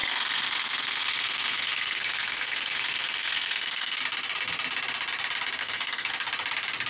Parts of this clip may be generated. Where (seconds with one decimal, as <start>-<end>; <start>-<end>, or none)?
0.0-4.0; 5.6-6.1